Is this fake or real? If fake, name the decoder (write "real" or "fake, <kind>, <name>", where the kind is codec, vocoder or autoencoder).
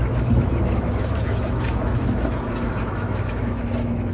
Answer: fake, autoencoder, DAC-VAE